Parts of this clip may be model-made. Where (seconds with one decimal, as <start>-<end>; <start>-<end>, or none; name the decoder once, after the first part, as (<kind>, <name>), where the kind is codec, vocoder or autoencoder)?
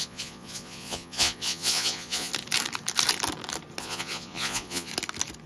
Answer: 0.0-2.3 (vocoder, Vocos); 3.8-4.9